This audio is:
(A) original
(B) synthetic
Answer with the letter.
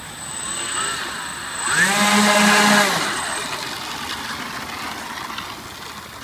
A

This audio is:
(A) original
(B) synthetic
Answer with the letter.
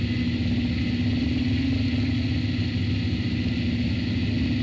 A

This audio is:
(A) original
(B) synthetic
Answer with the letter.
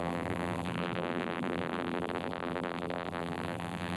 B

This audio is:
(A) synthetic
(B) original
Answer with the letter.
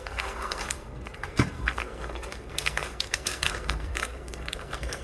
A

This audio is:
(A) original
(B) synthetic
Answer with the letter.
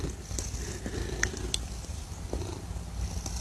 A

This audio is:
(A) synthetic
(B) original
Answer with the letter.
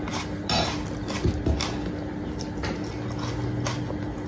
B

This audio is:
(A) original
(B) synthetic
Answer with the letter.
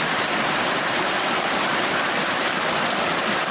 B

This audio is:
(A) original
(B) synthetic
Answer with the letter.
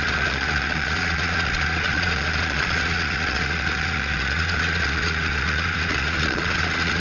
B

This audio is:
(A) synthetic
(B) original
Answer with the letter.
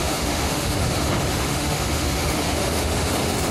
A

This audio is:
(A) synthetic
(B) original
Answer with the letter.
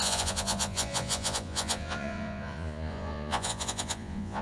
A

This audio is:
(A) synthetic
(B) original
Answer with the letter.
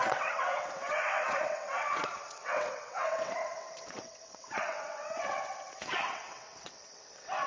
A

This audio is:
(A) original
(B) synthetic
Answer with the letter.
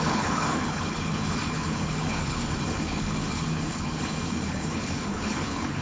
B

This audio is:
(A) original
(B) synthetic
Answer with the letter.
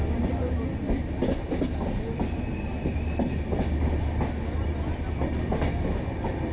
A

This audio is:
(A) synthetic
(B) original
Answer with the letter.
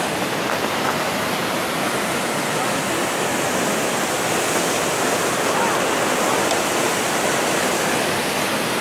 B